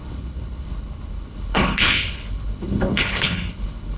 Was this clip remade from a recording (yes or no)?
yes